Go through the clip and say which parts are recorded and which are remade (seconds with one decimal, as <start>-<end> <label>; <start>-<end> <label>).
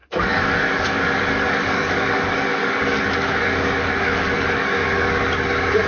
0.0-5.9 remade